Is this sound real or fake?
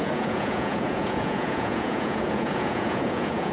fake